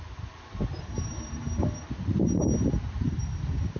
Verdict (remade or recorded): recorded